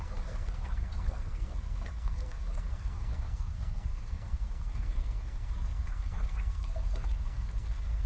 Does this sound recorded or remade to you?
remade